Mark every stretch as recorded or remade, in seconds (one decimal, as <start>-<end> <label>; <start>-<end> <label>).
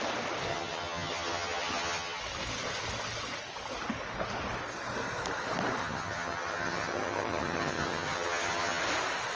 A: 0.0-0.5 recorded; 0.5-2.2 remade; 2.2-5.8 recorded; 5.8-8.8 remade; 8.8-9.4 recorded